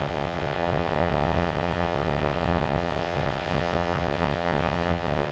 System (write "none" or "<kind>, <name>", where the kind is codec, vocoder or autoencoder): vocoder, WaveNeXt